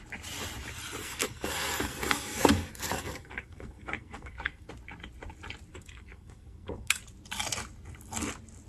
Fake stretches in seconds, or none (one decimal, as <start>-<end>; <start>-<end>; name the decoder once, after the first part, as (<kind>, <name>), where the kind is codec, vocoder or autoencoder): 1.0-4.7 (codec, SNAC); 5.7-7.0